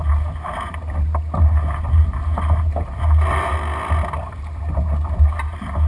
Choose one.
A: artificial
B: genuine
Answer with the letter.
B